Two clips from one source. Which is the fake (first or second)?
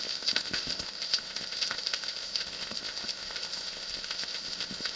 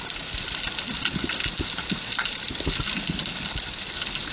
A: first